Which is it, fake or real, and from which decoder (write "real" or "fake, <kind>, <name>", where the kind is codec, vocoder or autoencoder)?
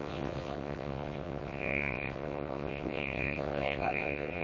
fake, vocoder, WaveNeXt